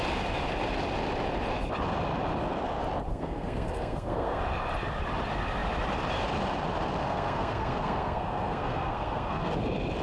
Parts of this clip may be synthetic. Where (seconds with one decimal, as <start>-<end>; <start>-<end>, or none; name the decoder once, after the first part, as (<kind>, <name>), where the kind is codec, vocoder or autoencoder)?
3.1-4.4 (codec, SNAC); 7.0-9.5